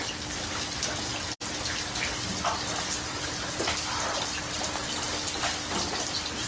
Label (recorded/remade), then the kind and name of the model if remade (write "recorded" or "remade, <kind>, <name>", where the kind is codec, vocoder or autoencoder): recorded